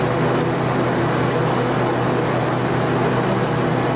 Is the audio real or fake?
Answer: real